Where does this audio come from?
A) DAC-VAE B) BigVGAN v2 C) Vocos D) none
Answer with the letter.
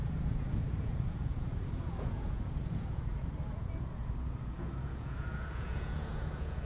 C